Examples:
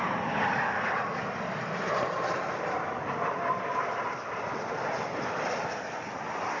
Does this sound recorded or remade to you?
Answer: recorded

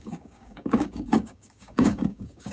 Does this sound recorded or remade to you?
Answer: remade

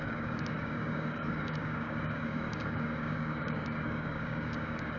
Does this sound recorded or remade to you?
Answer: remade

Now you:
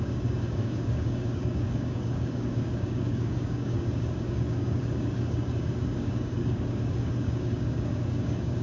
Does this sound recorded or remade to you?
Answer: remade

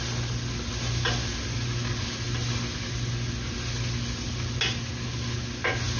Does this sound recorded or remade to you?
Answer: recorded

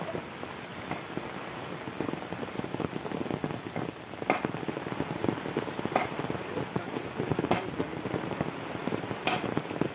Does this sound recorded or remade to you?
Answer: recorded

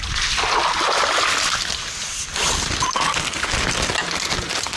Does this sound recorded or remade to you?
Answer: recorded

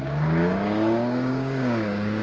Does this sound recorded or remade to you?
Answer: remade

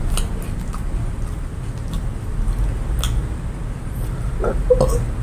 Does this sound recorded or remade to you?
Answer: recorded